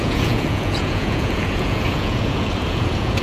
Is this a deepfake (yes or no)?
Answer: yes